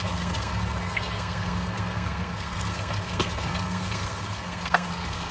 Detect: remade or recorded remade